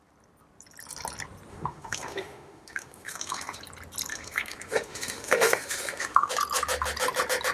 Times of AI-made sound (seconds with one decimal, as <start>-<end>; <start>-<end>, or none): 1.5-3.6; 4.1-6.3